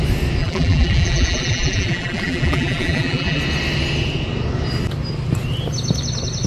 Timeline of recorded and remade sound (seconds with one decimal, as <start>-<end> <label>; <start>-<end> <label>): 0.0-0.4 recorded; 0.4-3.4 remade; 3.4-6.5 recorded